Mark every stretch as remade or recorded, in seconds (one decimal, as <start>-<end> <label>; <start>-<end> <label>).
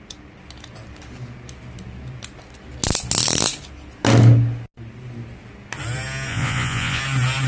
0.0-6.3 recorded; 6.3-7.0 remade; 7.0-7.5 recorded